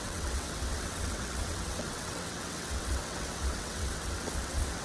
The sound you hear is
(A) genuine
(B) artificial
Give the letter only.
B